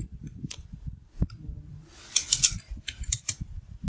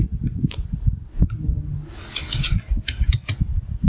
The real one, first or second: second